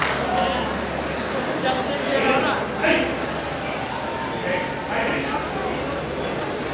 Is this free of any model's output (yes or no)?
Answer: yes